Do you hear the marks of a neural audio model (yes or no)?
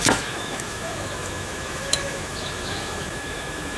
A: yes